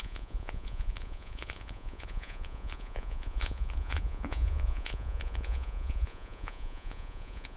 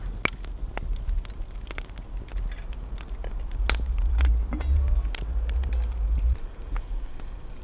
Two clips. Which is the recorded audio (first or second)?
second